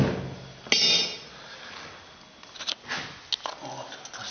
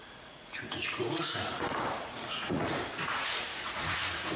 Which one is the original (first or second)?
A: first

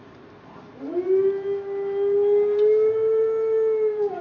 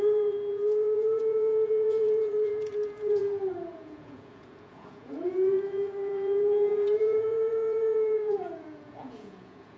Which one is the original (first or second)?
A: first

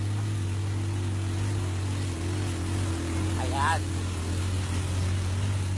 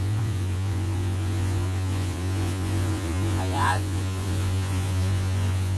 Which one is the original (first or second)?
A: first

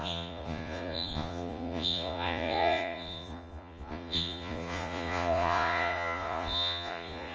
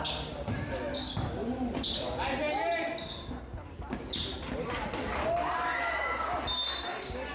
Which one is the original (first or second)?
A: second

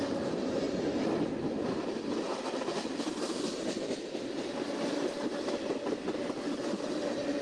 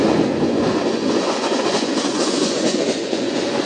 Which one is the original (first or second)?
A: first